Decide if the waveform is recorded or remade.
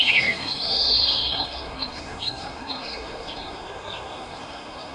remade